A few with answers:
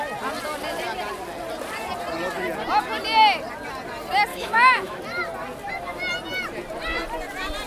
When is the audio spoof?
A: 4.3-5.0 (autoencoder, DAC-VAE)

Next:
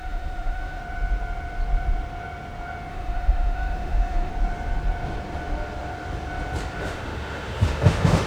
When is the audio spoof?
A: 0.0-0.8 (autoencoder, DAC-VAE); 2.9-4.3; 6.8-8.3

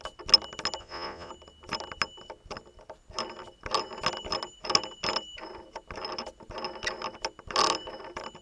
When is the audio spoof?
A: 0.8-1.3 (vocoder, Vocos)

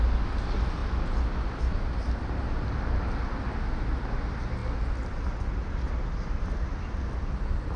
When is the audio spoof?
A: none